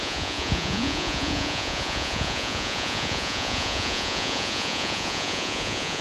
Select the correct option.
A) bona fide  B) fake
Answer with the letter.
B